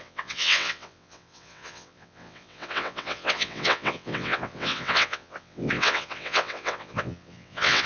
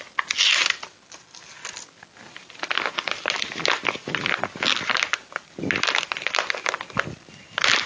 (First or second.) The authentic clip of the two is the second